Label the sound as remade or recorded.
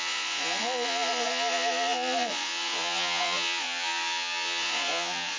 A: remade